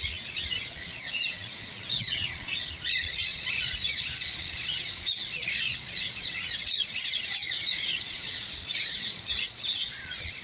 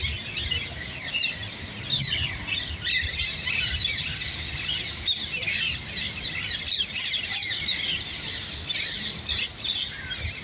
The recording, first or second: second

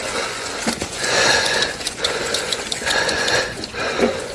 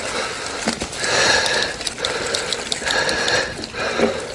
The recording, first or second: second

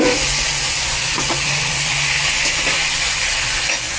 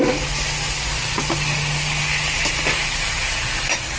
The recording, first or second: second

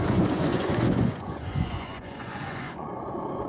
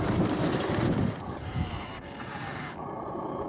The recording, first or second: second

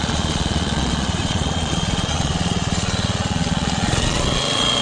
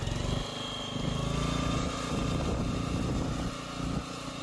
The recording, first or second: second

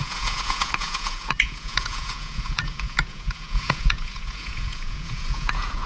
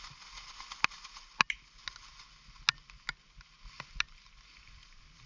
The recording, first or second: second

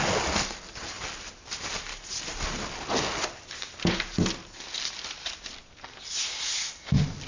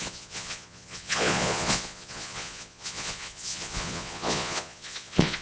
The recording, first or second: first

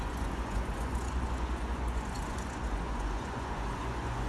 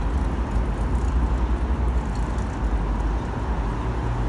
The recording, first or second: second